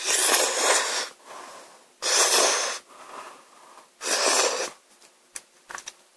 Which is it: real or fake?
real